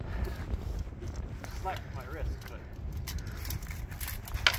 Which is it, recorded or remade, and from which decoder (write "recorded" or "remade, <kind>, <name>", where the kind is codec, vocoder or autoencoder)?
recorded